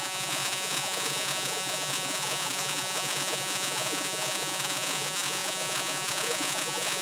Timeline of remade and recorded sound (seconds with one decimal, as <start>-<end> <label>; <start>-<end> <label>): 0.0-7.0 remade